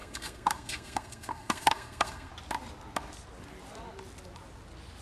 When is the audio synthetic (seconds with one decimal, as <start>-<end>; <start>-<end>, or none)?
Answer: 0.0-2.3